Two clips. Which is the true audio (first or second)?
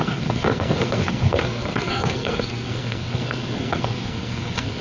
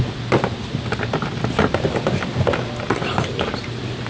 second